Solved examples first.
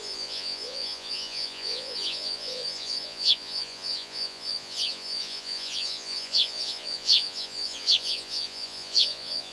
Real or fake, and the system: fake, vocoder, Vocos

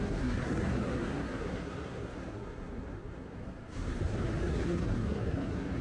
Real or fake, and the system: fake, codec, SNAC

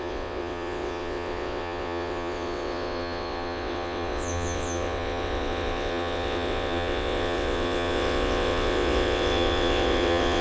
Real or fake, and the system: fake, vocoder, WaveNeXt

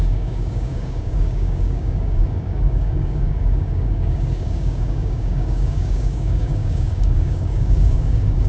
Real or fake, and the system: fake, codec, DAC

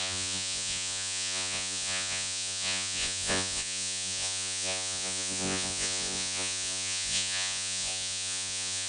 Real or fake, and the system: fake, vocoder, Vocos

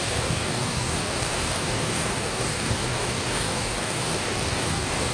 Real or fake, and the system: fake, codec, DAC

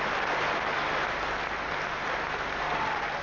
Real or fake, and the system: real